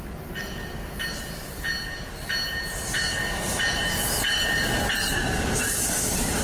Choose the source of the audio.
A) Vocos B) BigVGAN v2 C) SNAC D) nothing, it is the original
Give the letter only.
D